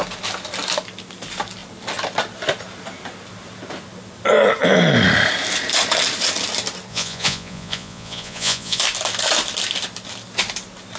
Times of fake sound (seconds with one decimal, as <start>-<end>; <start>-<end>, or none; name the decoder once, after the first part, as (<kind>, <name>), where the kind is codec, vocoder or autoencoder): 6.9-8.8 (vocoder, Vocos)